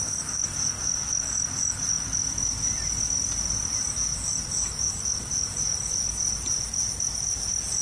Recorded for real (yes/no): yes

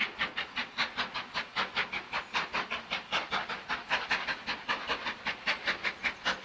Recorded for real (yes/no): yes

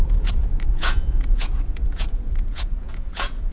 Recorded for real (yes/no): no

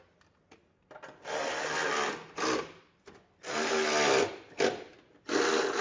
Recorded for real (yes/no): yes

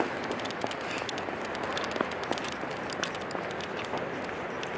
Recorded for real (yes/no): yes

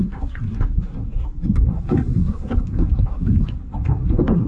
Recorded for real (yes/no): no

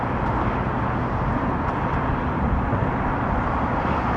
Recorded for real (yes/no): yes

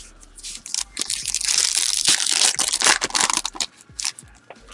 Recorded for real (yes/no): yes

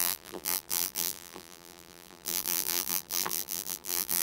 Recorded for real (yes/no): no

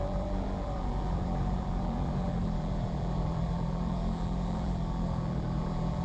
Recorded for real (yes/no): no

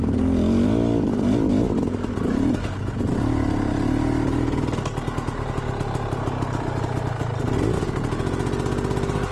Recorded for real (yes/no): yes